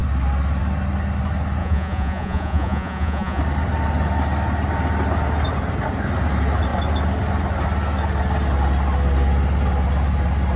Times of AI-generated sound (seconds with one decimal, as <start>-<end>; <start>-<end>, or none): 1.6-3.4